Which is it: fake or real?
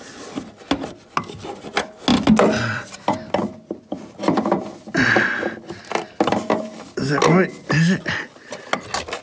real